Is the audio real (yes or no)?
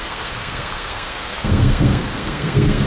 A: no